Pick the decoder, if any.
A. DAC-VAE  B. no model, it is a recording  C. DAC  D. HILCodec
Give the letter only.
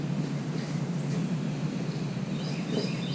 B